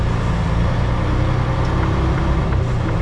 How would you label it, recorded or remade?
recorded